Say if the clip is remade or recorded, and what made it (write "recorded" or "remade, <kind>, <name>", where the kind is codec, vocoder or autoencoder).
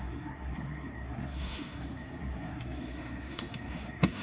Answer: remade, codec, SNAC